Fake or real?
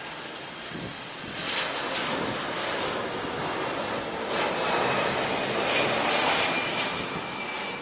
real